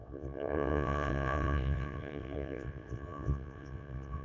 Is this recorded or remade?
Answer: remade